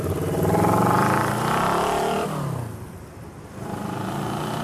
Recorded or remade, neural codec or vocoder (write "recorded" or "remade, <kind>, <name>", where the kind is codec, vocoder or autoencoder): recorded